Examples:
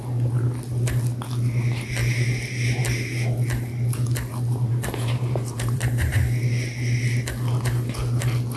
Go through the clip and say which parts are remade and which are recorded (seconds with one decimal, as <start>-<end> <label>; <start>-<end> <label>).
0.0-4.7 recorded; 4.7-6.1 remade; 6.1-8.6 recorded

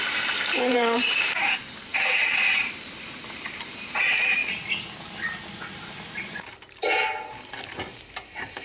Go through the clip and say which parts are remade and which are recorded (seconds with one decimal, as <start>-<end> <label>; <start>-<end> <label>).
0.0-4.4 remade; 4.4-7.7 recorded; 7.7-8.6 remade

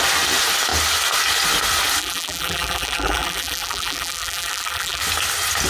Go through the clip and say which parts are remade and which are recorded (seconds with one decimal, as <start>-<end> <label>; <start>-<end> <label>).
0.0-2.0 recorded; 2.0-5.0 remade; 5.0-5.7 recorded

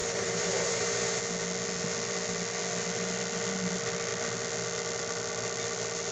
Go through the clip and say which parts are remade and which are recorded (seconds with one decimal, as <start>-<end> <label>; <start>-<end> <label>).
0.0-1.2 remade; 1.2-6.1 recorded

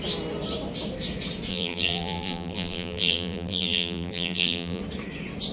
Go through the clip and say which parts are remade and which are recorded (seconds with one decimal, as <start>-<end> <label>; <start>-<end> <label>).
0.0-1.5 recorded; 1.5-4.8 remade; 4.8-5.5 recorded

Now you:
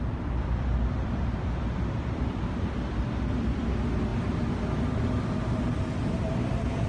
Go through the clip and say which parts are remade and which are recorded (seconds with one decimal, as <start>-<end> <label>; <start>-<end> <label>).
0.0-4.1 remade; 4.1-5.6 recorded; 5.6-6.9 remade